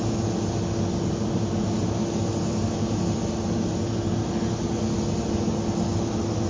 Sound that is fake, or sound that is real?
real